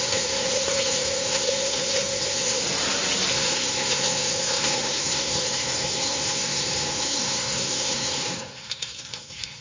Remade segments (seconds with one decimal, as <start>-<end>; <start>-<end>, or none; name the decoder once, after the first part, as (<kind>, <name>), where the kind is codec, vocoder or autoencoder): 0.0-2.6 (codec, SNAC); 3.3-9.6